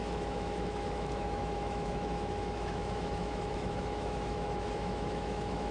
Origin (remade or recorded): remade